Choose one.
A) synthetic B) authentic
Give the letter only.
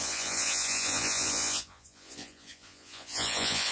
A